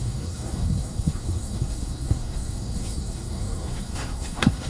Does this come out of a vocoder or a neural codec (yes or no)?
yes